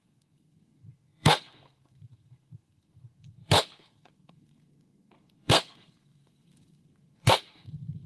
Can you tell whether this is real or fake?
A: fake